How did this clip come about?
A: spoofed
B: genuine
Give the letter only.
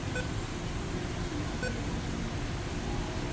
B